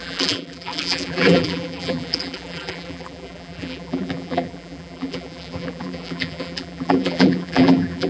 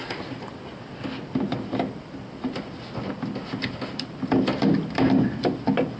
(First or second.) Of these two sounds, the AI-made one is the first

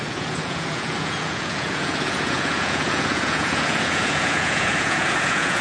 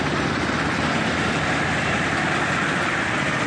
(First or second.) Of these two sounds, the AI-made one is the first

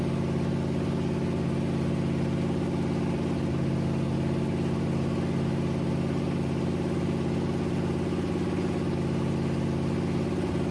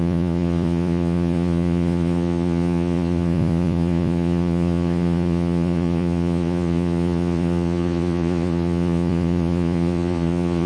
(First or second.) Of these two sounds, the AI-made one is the second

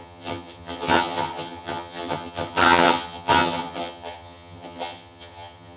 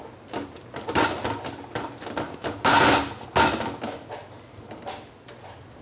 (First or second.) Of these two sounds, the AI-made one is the first